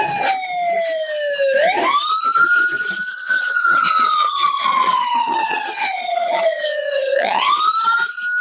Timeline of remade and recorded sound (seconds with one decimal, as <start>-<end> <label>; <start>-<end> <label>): 0.0-3.1 recorded; 3.1-7.5 remade; 7.5-8.4 recorded